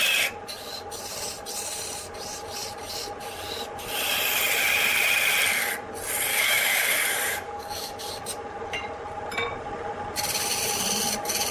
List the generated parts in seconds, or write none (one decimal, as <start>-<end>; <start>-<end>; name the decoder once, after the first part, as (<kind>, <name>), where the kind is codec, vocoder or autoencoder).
6.3-8.1 (codec, DAC)